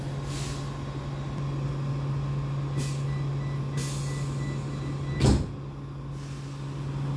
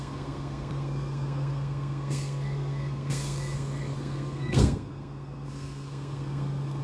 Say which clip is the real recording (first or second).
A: first